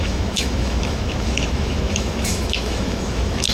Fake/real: fake